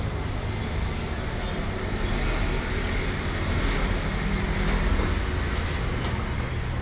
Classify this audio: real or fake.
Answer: real